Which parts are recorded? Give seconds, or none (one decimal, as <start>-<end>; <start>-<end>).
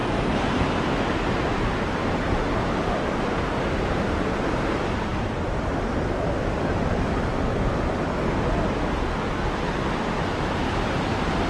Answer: 0.0-2.8; 7.5-10.9